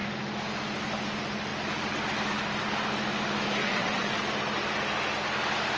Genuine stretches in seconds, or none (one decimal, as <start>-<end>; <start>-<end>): 0.0-3.6; 4.2-5.8

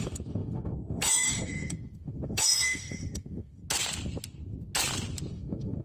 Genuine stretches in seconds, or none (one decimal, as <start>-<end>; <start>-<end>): 3.6-5.3